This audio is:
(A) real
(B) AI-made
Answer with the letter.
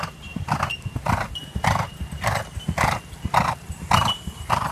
B